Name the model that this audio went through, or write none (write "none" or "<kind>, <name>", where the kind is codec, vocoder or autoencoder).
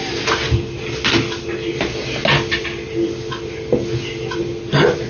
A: none